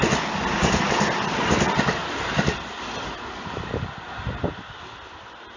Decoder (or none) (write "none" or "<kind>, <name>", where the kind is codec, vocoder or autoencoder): none